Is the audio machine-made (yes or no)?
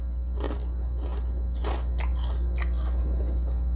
no